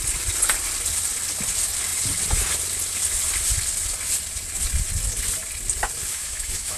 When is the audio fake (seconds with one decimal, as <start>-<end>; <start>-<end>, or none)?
6.1-6.8